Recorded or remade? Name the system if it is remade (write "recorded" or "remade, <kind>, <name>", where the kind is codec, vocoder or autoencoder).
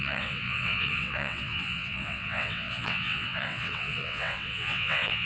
remade, vocoder, WaveNeXt